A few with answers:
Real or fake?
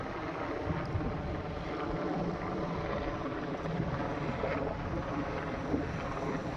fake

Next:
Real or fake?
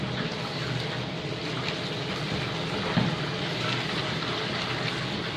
real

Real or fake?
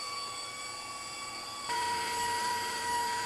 fake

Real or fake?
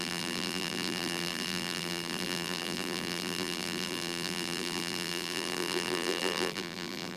fake